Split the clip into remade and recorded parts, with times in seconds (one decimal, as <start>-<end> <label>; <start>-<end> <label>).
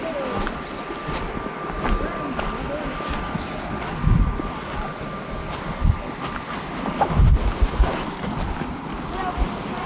0.0-9.9 recorded